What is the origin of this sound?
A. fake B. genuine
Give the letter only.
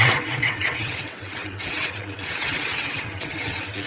A